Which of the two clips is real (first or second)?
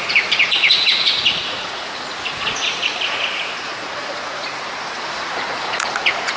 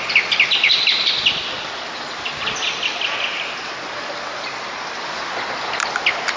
second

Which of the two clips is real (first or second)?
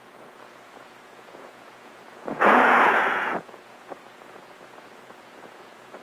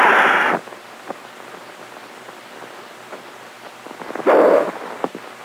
second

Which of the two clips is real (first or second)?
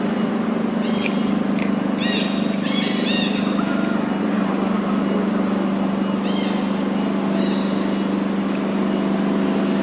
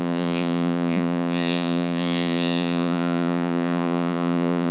first